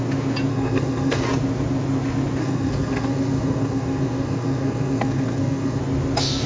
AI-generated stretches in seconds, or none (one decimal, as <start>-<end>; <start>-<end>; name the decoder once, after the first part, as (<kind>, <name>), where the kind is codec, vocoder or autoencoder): 0.5-1.2 (codec, SNAC); 2.4-5.8